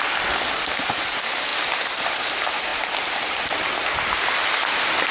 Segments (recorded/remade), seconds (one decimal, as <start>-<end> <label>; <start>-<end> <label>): 0.0-5.1 recorded

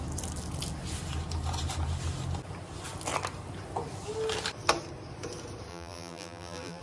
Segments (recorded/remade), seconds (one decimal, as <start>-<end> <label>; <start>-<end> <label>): 0.0-5.7 recorded; 5.7-6.8 remade

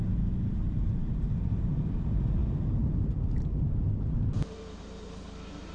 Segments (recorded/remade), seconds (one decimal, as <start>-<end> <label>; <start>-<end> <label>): 0.0-5.7 remade

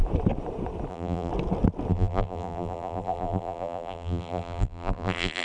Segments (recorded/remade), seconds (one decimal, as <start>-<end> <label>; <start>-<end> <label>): 0.0-0.9 recorded; 0.9-1.3 remade; 1.3-1.9 recorded; 1.9-5.4 remade

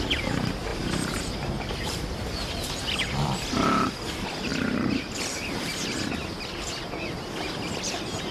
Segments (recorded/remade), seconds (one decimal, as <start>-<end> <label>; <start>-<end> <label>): 0.0-0.7 recorded; 0.7-3.9 remade; 3.9-4.5 recorded; 4.5-6.1 remade; 6.1-8.3 recorded

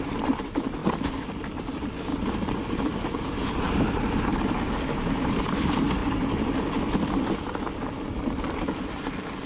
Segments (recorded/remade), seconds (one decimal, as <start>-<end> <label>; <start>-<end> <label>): 0.0-0.8 remade; 0.8-1.6 recorded; 1.6-4.3 remade; 4.3-4.9 recorded; 4.9-6.0 remade; 6.0-9.5 recorded